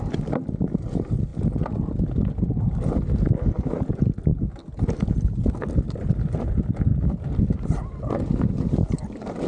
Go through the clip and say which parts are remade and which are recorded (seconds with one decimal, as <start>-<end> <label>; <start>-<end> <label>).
0.0-9.5 recorded